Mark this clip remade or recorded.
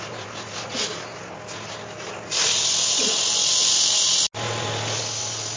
recorded